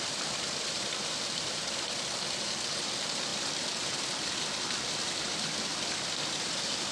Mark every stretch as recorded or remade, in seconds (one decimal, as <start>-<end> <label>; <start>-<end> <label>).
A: 0.0-3.3 remade; 3.3-4.9 recorded; 4.9-6.9 remade